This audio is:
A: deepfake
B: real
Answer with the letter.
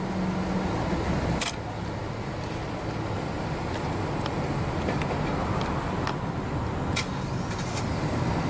B